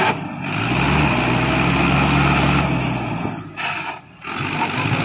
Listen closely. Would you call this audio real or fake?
real